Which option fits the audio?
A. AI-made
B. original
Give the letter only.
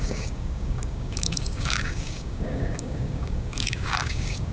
A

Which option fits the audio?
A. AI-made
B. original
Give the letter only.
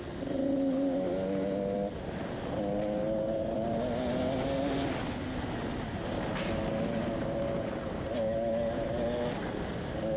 B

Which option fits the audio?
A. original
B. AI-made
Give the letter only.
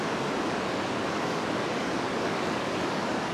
B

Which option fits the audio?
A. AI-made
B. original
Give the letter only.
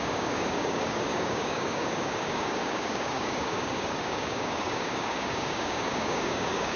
A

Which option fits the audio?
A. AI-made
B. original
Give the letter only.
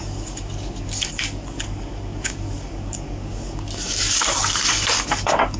A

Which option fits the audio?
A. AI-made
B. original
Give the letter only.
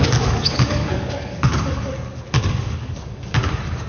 A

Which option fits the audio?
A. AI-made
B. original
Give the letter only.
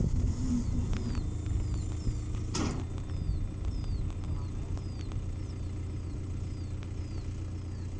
B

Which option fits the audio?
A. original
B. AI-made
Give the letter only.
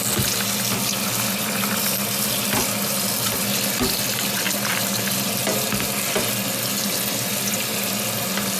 A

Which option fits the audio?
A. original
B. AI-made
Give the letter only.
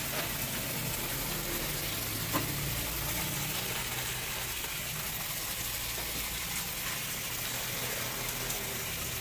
A